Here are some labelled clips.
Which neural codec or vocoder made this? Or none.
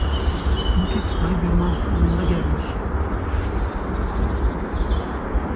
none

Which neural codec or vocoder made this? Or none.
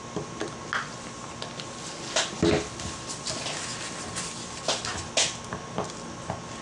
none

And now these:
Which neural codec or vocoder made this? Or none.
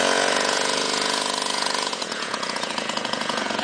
vocoder, Vocos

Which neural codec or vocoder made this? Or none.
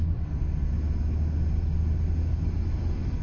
none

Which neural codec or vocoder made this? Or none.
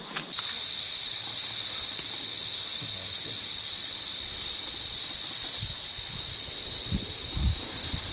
none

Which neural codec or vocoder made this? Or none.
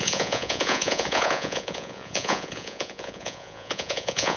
vocoder, Vocos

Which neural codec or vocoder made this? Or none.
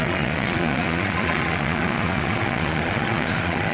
vocoder, Vocos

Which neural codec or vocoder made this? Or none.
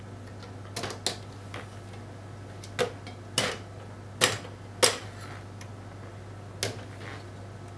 none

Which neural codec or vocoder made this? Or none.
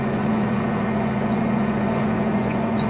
vocoder, Vocos